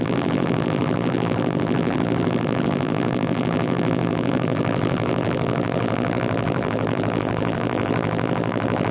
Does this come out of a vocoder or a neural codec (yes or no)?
yes